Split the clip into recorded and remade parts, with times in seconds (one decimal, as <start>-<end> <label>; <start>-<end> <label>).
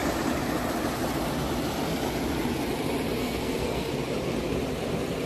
0.0-3.2 recorded; 3.2-3.9 remade; 3.9-5.3 recorded